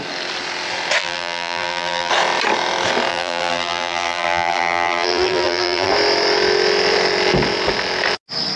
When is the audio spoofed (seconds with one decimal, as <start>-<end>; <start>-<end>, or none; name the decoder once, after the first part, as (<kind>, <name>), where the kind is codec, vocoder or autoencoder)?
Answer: 1.0-2.1 (vocoder, BigVGAN v2); 3.1-5.9